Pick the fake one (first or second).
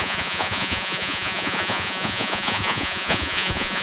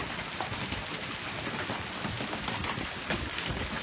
first